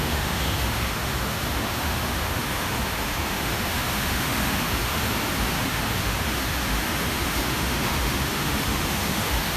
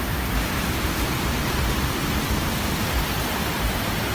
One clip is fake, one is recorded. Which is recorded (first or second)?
second